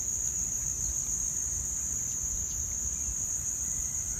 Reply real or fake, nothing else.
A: real